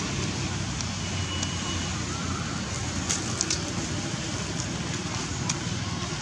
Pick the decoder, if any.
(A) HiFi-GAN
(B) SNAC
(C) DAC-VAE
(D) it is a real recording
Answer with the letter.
D